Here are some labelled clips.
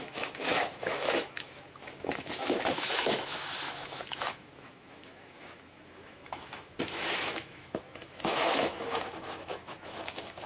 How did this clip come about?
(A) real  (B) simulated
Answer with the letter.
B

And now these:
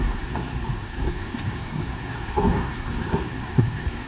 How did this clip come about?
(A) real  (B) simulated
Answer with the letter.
B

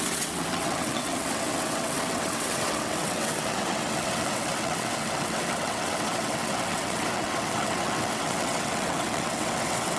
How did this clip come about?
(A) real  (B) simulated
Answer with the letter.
B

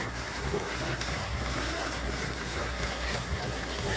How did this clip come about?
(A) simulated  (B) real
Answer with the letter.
A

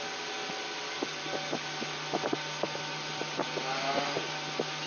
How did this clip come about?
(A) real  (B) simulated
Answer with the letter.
A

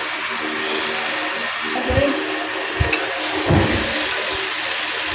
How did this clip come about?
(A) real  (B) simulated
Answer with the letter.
A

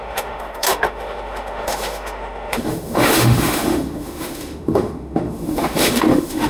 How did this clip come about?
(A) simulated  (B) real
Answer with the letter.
A